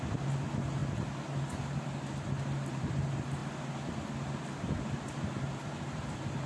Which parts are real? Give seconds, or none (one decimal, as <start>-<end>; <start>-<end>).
0.0-6.5